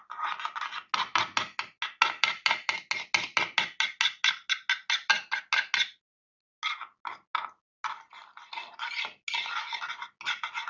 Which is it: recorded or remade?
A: recorded